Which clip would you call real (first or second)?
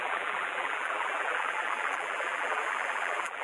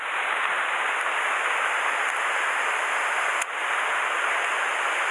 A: second